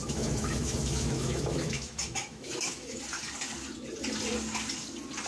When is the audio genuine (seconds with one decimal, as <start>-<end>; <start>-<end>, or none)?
3.0-5.3